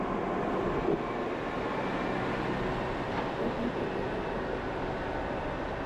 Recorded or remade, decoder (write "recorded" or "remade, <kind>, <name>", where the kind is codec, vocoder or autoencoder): recorded